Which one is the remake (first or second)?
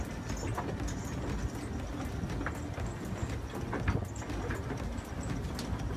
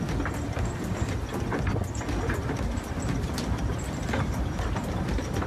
second